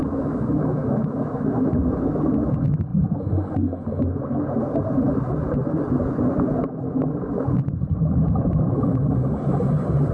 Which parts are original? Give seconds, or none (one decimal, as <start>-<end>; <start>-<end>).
1.7-10.1